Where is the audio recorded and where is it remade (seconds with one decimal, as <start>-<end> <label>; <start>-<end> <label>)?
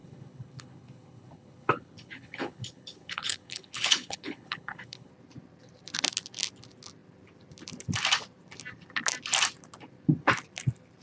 0.0-5.1 remade; 5.1-11.0 recorded